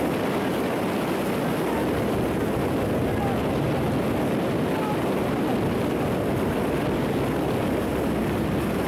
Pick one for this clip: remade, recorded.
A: recorded